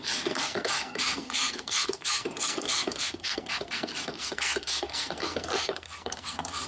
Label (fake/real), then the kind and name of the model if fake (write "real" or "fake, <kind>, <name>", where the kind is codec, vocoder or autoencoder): fake, codec, SNAC